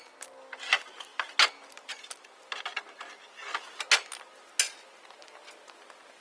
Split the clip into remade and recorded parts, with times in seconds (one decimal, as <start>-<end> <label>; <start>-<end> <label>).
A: 0.0-6.2 recorded